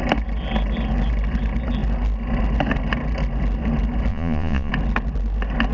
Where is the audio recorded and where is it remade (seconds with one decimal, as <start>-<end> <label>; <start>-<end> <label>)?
0.0-4.1 recorded; 4.1-4.7 remade; 4.7-5.7 recorded